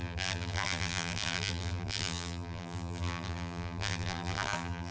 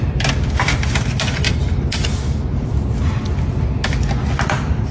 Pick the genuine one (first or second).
second